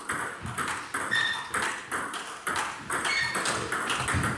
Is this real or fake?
real